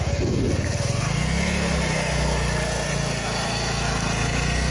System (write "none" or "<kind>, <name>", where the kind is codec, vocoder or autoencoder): none